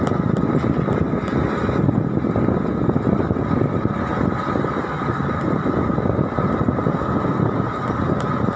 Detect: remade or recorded recorded